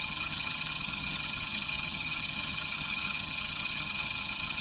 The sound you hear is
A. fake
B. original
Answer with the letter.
A